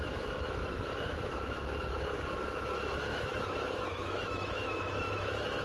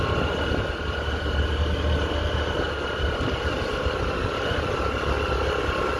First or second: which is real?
second